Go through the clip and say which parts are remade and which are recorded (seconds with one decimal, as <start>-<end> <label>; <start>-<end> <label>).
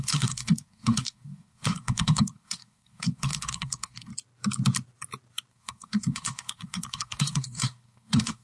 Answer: 0.0-4.1 remade; 4.1-5.5 recorded; 5.5-8.4 remade